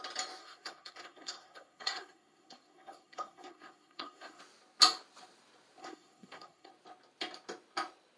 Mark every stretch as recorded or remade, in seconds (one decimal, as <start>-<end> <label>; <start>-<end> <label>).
0.0-0.4 recorded; 0.4-4.4 remade; 4.4-5.8 recorded; 5.8-6.7 remade; 6.7-8.2 recorded